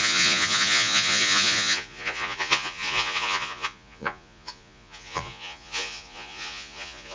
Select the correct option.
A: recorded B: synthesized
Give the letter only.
B